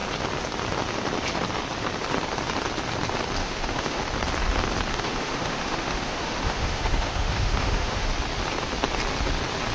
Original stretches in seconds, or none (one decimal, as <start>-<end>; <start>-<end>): 0.0-3.4; 4.0-4.9; 8.1-9.7